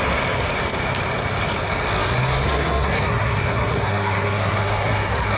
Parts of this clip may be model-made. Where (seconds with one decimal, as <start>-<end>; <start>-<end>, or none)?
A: 2.0-5.4